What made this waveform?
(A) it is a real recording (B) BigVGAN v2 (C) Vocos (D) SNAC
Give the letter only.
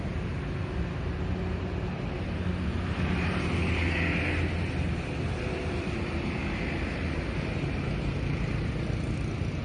A